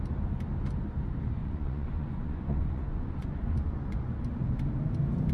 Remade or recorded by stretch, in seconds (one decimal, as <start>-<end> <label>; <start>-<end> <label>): 0.0-1.4 recorded; 1.4-4.1 remade; 4.1-5.3 recorded